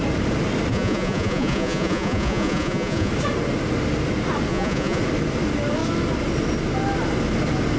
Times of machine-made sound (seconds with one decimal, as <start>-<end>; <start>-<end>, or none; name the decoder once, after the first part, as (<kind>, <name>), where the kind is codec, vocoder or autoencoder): 0.7-3.1 (vocoder, Vocos); 4.5-5.0